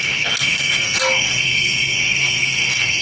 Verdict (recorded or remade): remade